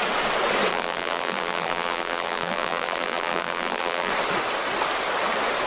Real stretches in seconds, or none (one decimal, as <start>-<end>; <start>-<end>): 0.0-0.7; 4.1-5.7